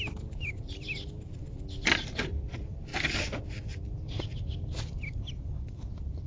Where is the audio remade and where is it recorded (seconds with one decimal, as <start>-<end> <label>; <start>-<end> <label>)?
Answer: 0.0-2.9 remade; 2.9-5.2 recorded; 5.2-6.3 remade